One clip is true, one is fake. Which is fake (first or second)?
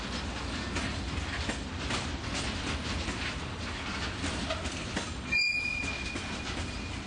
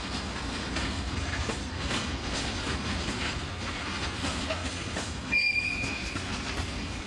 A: second